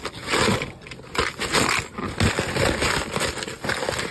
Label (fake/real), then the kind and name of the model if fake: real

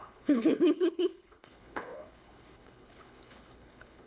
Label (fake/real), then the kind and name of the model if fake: fake, codec, HILCodec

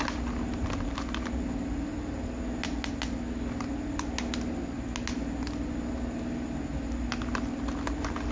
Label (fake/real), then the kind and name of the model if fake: real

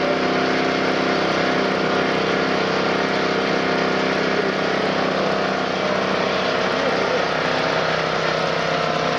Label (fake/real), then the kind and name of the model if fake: real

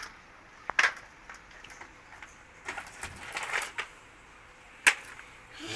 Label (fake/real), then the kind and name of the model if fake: real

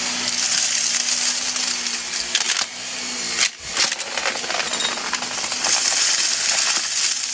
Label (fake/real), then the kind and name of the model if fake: real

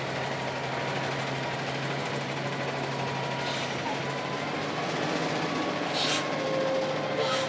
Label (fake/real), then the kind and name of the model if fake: real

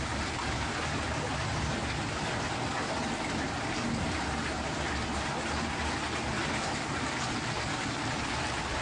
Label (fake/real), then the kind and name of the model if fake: real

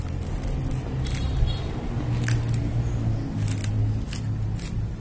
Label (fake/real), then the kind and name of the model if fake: real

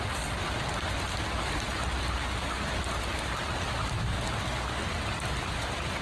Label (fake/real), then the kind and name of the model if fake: real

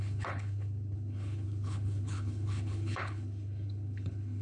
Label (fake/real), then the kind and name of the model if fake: fake, codec, HILCodec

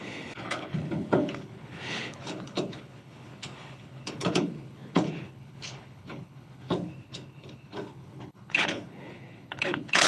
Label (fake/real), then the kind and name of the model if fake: fake, codec, HILCodec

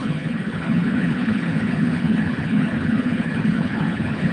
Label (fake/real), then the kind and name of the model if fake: fake, codec, HILCodec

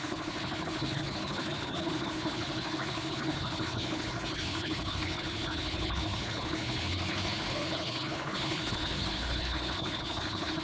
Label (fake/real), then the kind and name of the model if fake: fake, codec, HILCodec